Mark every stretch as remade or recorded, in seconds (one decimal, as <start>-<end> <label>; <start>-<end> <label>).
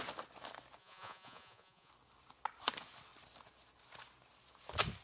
0.0-0.8 recorded; 0.8-1.9 remade; 1.9-5.0 recorded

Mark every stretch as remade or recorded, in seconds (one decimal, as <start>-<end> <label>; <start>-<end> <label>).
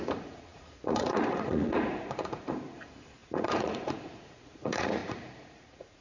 0.0-6.0 remade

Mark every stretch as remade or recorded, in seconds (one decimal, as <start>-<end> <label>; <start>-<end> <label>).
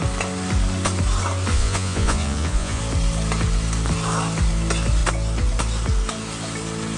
0.0-1.5 recorded; 1.5-2.8 remade; 2.8-7.0 recorded